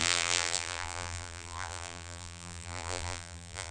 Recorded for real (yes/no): no